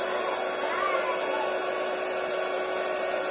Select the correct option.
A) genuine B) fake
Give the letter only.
A